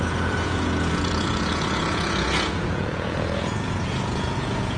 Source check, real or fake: fake